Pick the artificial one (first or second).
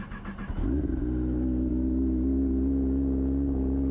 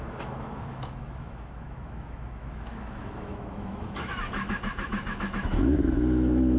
second